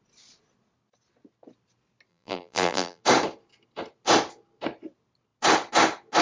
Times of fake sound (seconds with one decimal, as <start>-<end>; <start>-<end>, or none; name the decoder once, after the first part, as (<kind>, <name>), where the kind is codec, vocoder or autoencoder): 2.1-3.0 (vocoder, BigVGAN v2)